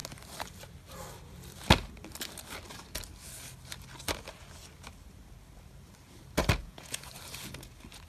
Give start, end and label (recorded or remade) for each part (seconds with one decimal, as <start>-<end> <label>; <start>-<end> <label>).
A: 0.0-6.6 recorded; 6.6-7.1 remade; 7.1-8.1 recorded